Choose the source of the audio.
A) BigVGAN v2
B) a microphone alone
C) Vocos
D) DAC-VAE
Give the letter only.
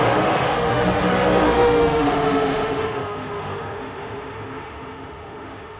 D